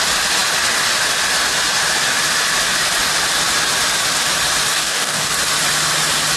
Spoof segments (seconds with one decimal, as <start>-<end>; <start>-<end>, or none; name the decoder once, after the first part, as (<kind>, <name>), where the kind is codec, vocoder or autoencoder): 4.7-5.3 (codec, DAC)